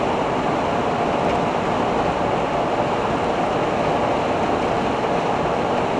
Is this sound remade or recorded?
recorded